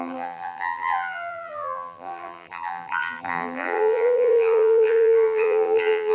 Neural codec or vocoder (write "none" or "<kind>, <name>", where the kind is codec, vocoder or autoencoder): vocoder, BigVGAN v2